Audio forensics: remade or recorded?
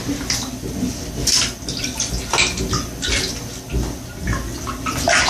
recorded